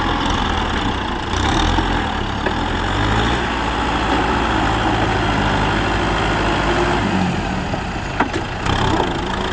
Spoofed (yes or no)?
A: no